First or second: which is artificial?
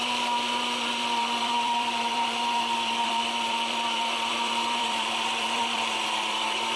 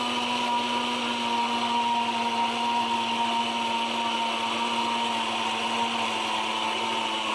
first